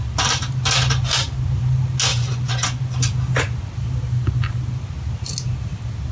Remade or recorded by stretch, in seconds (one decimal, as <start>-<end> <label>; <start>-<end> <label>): 0.0-2.1 recorded; 2.1-2.8 remade; 2.8-6.1 recorded